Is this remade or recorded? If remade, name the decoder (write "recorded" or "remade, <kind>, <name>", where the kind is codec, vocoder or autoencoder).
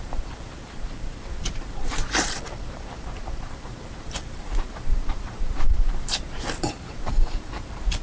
remade, vocoder, BigVGAN v2